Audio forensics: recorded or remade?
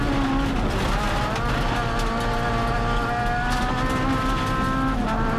recorded